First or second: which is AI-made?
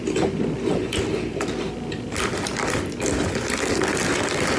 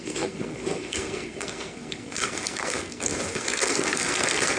second